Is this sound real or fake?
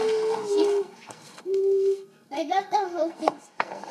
fake